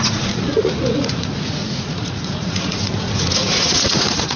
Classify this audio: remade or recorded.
remade